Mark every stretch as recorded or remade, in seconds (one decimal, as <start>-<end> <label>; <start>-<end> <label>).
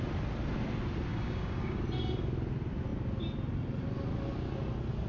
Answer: 0.0-1.1 recorded; 1.1-1.8 remade; 1.8-5.1 recorded